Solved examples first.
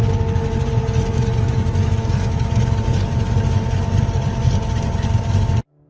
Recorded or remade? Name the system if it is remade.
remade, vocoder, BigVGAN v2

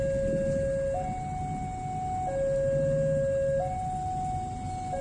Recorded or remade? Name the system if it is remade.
recorded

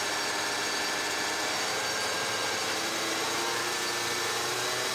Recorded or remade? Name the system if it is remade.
remade, vocoder, BigVGAN v2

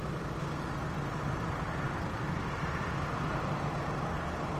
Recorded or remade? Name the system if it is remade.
recorded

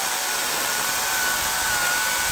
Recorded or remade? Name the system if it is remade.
recorded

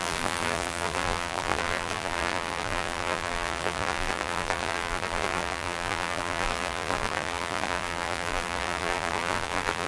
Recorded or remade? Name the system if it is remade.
remade, vocoder, BigVGAN v2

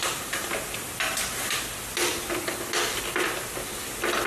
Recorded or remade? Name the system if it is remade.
recorded